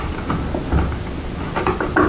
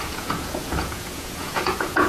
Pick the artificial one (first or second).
second